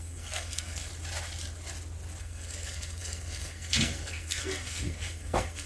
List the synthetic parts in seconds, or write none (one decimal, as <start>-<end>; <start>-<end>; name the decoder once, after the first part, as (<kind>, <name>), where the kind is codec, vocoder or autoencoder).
0.0-0.9 (codec, SNAC); 2.2-5.7